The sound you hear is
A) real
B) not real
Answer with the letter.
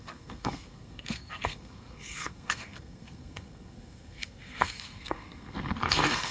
B